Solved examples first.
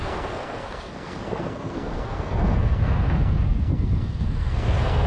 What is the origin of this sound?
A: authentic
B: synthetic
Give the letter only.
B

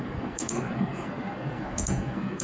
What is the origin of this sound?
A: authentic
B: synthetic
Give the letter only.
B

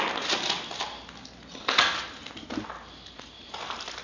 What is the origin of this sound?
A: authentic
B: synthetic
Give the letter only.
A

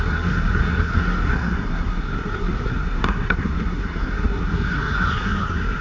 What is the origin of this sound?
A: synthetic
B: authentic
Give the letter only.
A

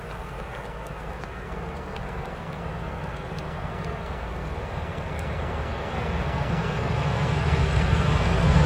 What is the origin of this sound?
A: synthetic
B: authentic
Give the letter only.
A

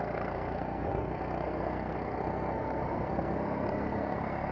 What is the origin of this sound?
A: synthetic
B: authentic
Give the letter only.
A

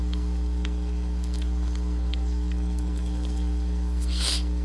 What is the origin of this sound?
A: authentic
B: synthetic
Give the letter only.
B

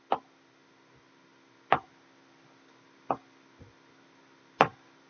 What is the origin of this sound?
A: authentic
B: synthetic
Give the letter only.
A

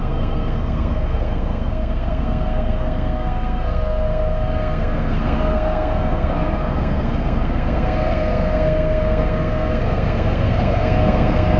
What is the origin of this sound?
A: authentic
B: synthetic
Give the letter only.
B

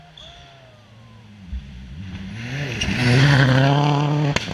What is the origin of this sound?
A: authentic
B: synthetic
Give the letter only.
A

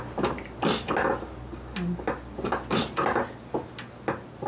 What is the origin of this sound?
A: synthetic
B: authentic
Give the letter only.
B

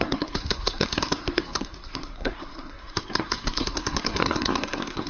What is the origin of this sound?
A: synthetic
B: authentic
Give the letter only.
A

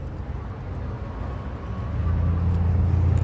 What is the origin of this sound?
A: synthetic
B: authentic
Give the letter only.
B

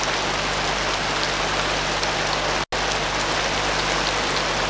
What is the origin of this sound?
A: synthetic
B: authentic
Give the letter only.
B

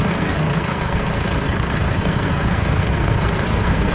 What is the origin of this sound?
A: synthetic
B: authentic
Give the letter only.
A